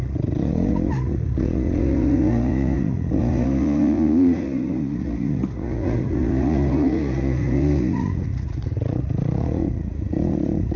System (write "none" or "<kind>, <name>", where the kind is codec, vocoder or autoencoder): vocoder, Vocos